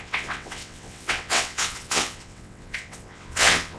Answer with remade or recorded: remade